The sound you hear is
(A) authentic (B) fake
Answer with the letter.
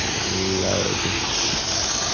A